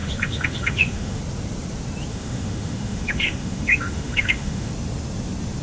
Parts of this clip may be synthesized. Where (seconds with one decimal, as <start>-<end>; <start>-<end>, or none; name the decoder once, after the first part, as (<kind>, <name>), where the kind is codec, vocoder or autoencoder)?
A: 0.0-1.2 (autoencoder, DAC-VAE); 2.1-4.7